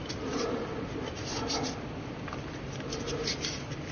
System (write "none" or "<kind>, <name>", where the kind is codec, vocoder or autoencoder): none